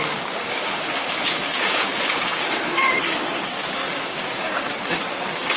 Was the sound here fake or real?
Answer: fake